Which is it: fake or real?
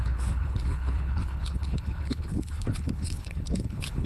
fake